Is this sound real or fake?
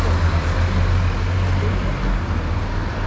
real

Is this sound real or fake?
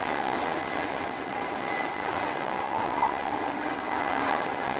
fake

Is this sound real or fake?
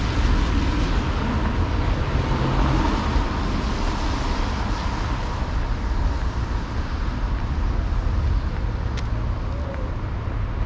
real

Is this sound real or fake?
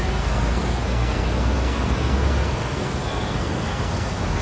fake